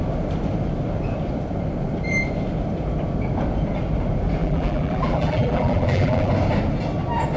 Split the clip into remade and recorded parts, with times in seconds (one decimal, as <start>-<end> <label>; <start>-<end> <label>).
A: 0.0-4.4 recorded; 4.4-6.3 remade; 6.3-7.4 recorded